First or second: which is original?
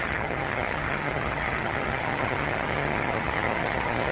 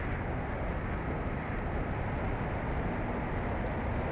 second